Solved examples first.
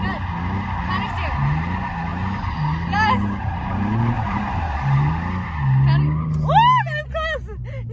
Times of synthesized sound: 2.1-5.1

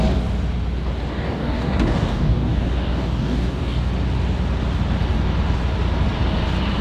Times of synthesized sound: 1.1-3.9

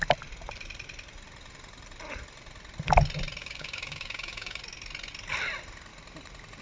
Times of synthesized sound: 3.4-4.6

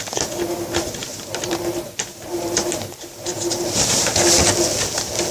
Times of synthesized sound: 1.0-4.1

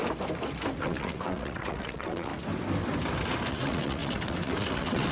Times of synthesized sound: 0.8-2.3; 3.5-5.1

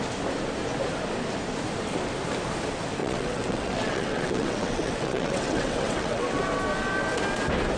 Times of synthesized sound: 3.0-6.4

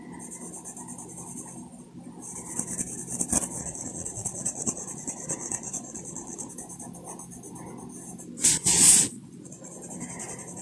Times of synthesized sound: 3.6-6.5; 8.5-9.7